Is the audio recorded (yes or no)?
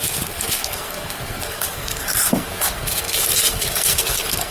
no